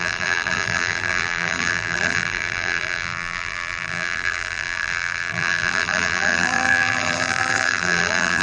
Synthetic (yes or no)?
yes